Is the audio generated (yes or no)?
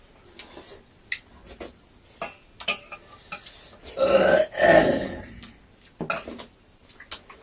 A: no